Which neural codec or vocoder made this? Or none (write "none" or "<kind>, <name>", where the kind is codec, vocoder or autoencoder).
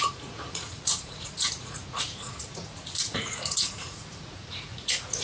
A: vocoder, Vocos